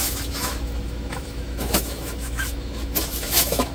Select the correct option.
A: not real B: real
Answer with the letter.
A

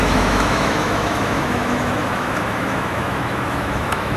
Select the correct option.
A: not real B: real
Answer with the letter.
A